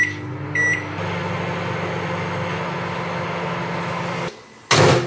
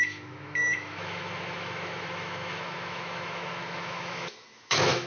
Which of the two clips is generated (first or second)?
second